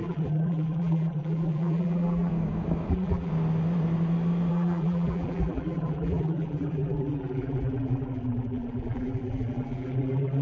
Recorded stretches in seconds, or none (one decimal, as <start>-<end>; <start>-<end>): 2.3-2.9; 3.3-4.5